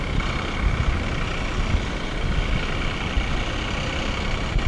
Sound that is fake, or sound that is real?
real